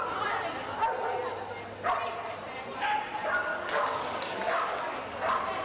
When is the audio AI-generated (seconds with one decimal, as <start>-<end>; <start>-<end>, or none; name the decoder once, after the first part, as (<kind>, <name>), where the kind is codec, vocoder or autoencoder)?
3.5-5.0 (codec, DAC)